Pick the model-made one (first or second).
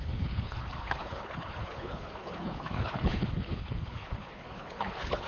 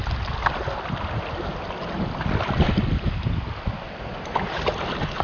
first